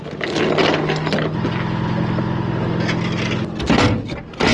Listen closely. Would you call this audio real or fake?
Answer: real